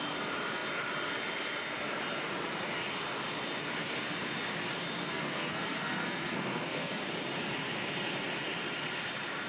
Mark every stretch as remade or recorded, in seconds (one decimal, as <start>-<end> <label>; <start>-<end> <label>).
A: 0.0-5.1 recorded; 5.1-7.0 remade; 7.0-9.5 recorded